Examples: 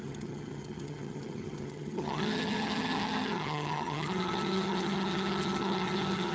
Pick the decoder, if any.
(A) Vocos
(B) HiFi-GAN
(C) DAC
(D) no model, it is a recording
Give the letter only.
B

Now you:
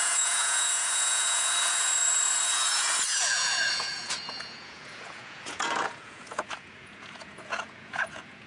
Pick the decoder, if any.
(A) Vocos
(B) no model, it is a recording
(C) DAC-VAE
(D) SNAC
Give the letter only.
A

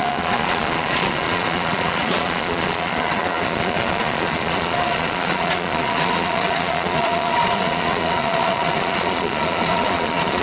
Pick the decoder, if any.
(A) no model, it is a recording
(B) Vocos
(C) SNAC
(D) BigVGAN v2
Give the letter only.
B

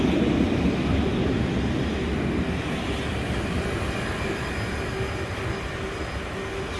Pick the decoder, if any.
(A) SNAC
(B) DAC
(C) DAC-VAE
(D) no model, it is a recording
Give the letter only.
D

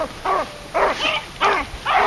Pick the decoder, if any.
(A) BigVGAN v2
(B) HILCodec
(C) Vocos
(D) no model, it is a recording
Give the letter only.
D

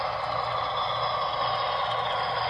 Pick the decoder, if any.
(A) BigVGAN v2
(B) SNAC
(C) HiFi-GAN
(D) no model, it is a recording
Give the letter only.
D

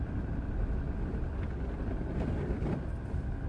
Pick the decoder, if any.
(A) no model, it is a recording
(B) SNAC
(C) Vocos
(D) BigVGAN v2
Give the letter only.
A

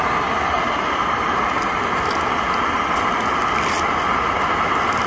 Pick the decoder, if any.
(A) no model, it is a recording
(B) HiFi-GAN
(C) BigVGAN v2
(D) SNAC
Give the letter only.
A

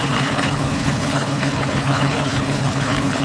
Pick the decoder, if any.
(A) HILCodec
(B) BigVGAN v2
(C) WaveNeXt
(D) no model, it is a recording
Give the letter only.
A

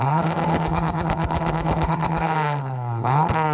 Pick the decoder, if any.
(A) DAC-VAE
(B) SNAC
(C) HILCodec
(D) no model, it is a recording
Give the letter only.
B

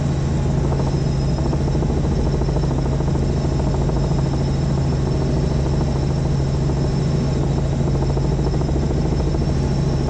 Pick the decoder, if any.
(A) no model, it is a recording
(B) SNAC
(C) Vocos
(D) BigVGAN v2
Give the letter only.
A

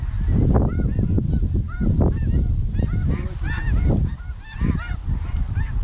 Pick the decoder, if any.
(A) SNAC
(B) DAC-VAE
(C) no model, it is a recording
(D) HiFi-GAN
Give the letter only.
C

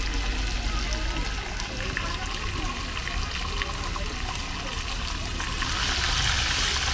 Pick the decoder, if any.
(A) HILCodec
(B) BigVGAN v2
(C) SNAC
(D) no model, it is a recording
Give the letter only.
D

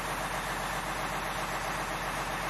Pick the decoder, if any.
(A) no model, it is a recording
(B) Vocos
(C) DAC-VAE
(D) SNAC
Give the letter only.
A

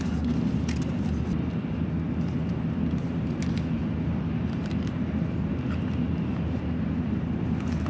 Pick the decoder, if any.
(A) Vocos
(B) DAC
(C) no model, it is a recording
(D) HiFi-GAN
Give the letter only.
C